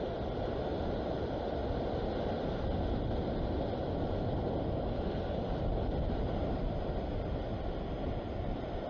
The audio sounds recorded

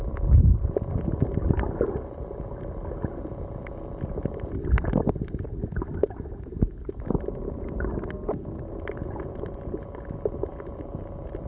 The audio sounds recorded